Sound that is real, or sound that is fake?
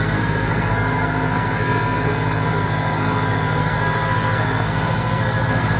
fake